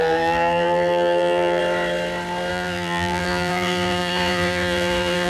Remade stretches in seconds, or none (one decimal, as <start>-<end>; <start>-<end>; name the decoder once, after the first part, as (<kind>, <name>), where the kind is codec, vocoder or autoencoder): 0.0-1.6 (vocoder, BigVGAN v2); 2.5-5.3

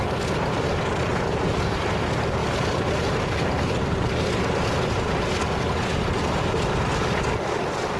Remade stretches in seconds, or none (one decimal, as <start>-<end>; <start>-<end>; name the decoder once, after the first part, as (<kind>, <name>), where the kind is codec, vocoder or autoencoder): 2.4-5.0 (vocoder, BigVGAN v2)

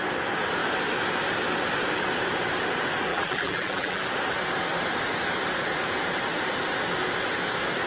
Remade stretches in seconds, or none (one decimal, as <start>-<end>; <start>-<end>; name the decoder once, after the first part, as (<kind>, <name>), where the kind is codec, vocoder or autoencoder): 3.1-4.0 (vocoder, BigVGAN v2)

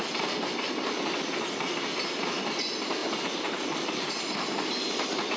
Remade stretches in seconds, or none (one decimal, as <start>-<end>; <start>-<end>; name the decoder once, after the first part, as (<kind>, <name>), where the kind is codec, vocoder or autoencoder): 3.0-4.7 (vocoder, BigVGAN v2)